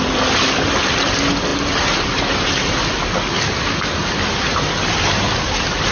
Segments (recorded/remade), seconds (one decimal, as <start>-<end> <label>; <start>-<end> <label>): 0.0-5.9 recorded